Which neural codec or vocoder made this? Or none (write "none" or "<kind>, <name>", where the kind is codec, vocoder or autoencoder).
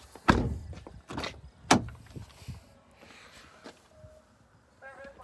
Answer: none